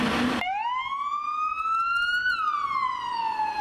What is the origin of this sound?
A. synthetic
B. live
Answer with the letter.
B